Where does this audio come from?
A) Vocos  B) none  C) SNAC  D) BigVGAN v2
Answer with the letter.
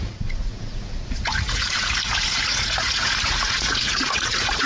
A